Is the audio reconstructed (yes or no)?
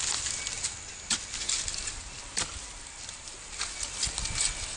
no